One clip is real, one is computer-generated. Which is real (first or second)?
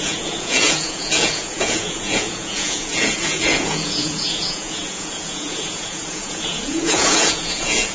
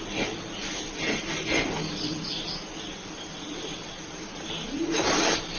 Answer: second